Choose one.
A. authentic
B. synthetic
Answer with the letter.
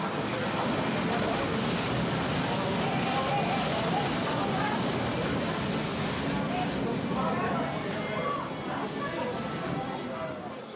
A